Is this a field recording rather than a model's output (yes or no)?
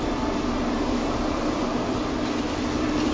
no